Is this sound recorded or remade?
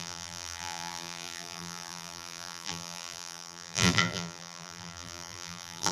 remade